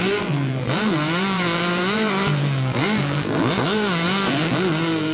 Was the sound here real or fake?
fake